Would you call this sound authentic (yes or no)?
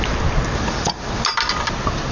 yes